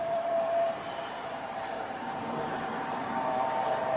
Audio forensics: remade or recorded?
remade